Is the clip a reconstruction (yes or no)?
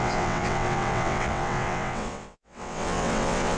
yes